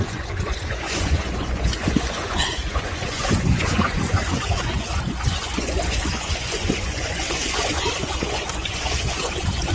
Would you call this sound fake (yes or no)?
yes